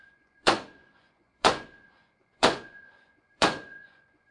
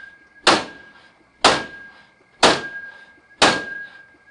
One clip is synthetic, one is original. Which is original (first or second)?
second